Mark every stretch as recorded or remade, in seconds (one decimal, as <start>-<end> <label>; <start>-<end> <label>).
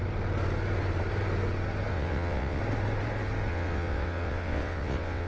0.0-1.9 recorded; 1.9-2.6 remade; 2.6-3.5 recorded; 3.5-5.3 remade